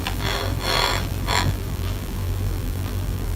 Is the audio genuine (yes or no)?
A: no